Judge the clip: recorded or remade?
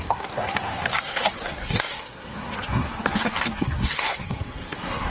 remade